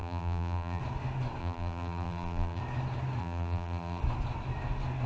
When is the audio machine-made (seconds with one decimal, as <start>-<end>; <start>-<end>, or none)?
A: 0.0-0.8; 1.4-2.6; 3.2-4.0

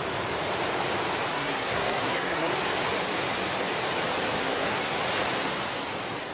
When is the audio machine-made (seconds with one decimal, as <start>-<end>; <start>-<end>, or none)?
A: 1.3-2.5; 4.4-5.0

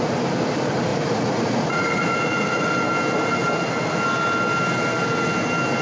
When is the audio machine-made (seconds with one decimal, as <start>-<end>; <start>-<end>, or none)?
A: 0.9-2.7

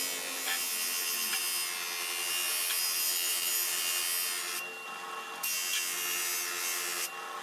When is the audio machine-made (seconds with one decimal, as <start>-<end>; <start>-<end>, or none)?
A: 2.5-3.8

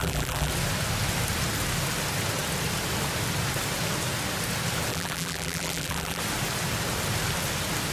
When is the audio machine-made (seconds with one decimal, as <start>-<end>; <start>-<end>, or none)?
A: 0.0-0.5; 4.9-6.2

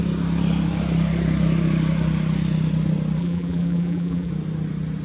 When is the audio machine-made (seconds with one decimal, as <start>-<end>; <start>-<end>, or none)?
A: 3.2-4.3

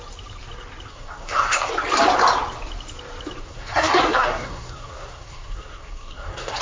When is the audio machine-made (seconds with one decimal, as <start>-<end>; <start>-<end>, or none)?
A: 0.9-1.7; 3.4-6.6